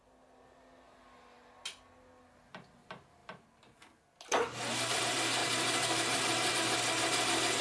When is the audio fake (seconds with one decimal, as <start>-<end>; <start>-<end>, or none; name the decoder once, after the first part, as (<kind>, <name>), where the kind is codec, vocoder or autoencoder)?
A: none